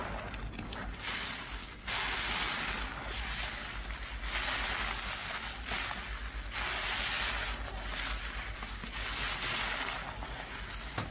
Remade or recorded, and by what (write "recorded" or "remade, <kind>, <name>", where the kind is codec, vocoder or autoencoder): recorded